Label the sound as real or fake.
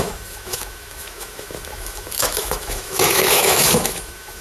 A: fake